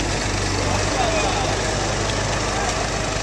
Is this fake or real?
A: real